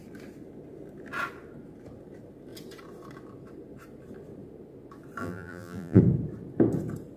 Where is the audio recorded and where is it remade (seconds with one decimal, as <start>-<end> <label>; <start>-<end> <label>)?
0.0-5.2 recorded; 5.2-6.0 remade; 6.0-7.2 recorded

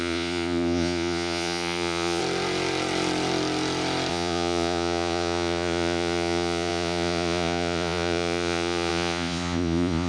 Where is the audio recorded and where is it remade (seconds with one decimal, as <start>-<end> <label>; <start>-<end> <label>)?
0.0-2.2 remade; 2.2-4.1 recorded; 4.1-10.1 remade

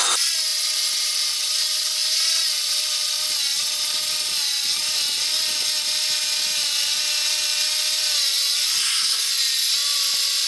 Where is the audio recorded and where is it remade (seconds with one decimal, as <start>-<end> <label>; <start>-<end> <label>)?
0.0-8.8 recorded; 8.8-9.3 remade; 9.3-10.5 recorded

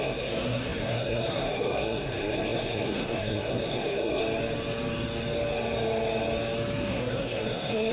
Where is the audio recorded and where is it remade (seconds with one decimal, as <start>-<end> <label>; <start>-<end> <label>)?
0.0-4.2 remade; 4.2-6.9 recorded; 6.9-7.9 remade

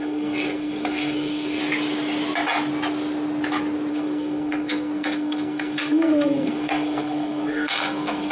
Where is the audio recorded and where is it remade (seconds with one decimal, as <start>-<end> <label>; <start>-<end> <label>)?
0.0-1.6 remade; 1.6-3.9 recorded; 3.9-8.3 remade

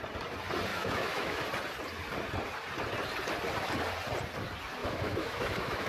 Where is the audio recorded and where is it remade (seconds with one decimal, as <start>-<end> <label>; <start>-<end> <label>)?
0.0-0.7 recorded; 0.7-1.4 remade; 1.4-4.8 recorded; 4.8-5.9 remade

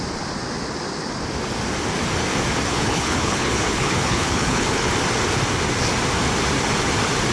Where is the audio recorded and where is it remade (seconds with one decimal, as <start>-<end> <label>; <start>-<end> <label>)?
0.0-2.7 recorded; 2.7-4.9 remade; 4.9-7.3 recorded